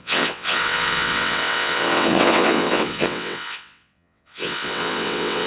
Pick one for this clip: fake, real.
fake